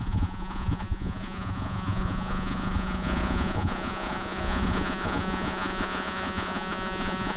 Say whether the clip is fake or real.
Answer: fake